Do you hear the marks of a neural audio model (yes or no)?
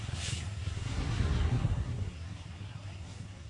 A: yes